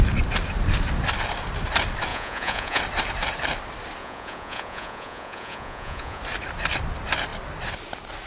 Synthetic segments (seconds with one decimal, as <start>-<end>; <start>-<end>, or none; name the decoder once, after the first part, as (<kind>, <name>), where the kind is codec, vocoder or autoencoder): 2.1-2.8 (vocoder, Vocos); 4.0-6.2